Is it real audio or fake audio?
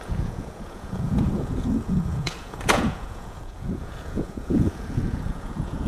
fake